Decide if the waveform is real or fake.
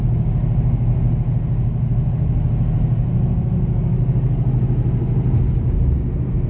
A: real